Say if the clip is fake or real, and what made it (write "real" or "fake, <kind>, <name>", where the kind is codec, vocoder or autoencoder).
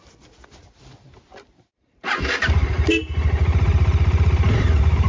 real